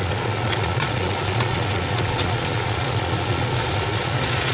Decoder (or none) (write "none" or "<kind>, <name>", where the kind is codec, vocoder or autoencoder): vocoder, Vocos